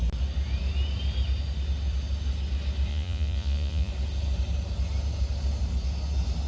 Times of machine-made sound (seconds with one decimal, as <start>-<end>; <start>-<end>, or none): 2.9-3.9